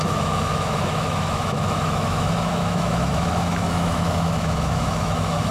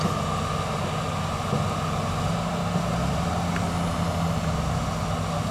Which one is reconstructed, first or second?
first